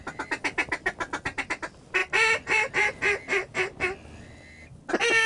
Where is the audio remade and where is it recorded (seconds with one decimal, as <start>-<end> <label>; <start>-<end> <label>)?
0.0-5.3 recorded